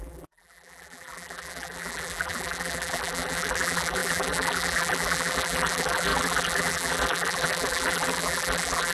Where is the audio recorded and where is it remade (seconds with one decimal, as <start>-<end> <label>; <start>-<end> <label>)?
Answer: 0.0-8.9 remade